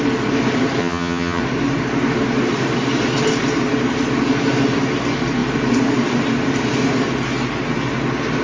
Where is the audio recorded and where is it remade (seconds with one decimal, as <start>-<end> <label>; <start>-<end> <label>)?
0.0-0.8 recorded; 0.8-1.4 remade; 1.4-8.4 recorded